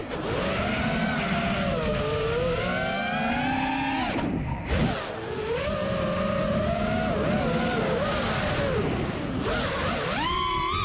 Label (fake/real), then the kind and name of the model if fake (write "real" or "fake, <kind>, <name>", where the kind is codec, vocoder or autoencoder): real